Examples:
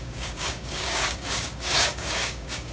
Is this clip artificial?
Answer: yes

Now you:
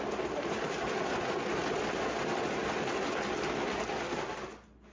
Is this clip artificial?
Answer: no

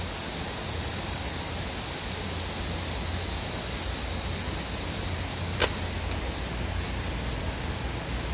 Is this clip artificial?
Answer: no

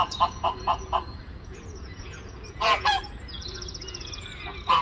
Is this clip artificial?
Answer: yes